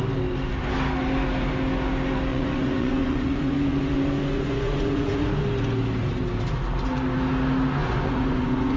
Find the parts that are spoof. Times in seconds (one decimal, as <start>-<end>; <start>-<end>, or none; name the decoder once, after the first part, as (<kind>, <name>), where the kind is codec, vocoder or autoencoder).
2.3-5.4 (vocoder, Vocos); 7.8-8.8